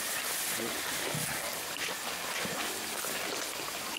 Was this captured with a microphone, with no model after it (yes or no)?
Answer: yes